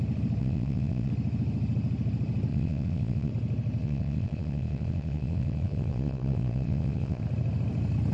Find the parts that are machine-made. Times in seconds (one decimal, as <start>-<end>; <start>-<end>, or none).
0.4-1.1; 2.5-3.3; 3.8-7.2